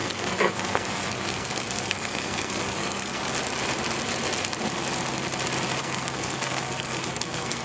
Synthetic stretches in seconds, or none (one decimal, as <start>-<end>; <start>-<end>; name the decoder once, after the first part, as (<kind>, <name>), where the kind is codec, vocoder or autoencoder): 0.0-3.2 (codec, SNAC); 5.8-7.6